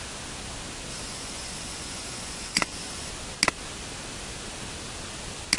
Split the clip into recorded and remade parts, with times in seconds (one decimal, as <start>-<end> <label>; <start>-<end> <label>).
0.0-0.9 recorded; 0.9-3.1 remade; 3.1-5.6 recorded